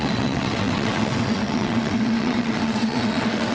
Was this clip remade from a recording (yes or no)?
yes